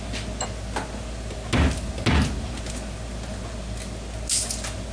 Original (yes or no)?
yes